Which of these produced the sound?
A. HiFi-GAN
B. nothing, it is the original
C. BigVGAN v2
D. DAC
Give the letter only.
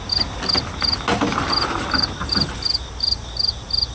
B